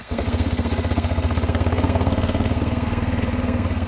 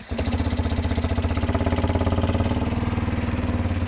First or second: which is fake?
first